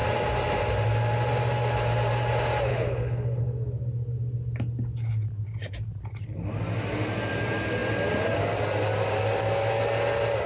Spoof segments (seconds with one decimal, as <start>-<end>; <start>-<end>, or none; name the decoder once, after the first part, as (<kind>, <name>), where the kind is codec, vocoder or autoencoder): 2.7-3.4 (codec, HILCodec)